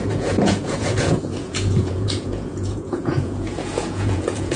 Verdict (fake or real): fake